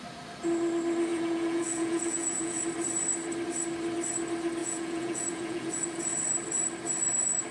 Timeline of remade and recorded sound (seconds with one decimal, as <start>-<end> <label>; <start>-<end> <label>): 0.0-1.1 recorded; 1.1-2.6 remade; 2.6-4.6 recorded; 4.6-5.8 remade; 5.8-7.5 recorded

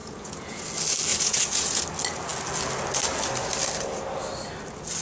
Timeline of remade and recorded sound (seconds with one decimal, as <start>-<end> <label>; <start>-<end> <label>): 0.0-0.6 remade; 0.6-1.1 recorded; 1.1-1.8 remade; 1.8-5.0 recorded

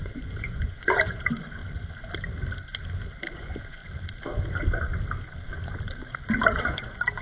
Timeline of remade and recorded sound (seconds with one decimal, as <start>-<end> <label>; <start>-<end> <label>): 0.0-1.6 remade; 1.6-3.3 recorded; 3.3-3.8 remade; 3.8-6.6 recorded; 6.6-7.2 remade

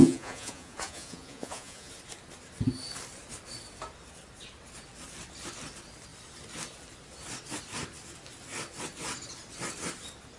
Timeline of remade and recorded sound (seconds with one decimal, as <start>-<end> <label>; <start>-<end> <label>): 0.0-1.9 remade; 1.9-10.4 recorded